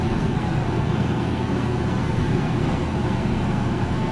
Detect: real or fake fake